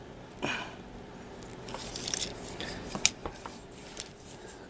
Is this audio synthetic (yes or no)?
no